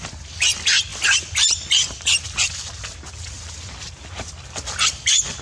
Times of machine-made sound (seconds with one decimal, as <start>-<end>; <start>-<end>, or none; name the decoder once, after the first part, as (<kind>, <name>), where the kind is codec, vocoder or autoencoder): 0.9-4.1 (vocoder, BigVGAN v2)